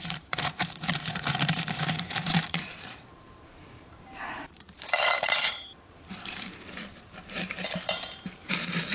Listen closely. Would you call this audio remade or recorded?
remade